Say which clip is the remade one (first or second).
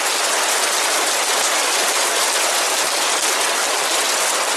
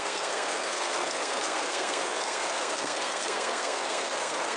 second